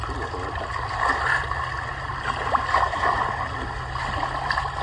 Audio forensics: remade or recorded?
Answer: recorded